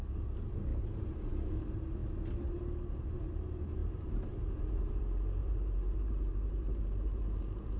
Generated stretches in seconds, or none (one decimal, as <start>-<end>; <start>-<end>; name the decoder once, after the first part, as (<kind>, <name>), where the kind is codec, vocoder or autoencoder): 0.7-1.5 (vocoder, BigVGAN v2); 3.8-5.0; 5.4-7.8